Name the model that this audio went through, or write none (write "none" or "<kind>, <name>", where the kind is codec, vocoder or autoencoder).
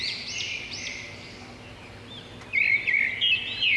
none